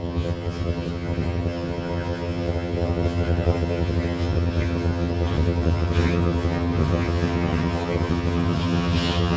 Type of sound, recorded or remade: remade